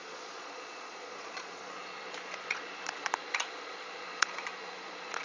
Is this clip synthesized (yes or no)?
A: yes